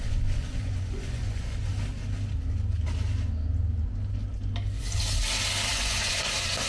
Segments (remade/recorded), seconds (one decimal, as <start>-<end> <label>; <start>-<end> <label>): 0.0-1.7 remade; 1.7-5.7 recorded; 5.7-6.7 remade